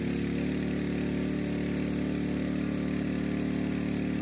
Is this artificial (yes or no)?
no